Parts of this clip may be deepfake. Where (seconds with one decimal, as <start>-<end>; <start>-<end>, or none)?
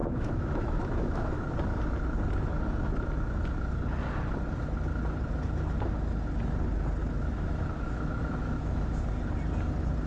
0.0-1.4; 7.0-9.0